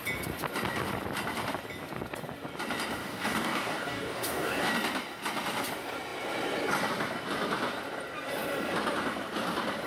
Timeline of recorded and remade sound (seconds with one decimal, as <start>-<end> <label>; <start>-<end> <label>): 0.0-3.0 recorded; 3.0-4.7 remade; 4.7-9.9 recorded